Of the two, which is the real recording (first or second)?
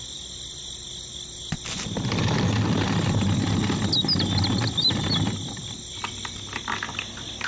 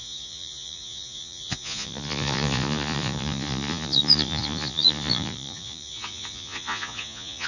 first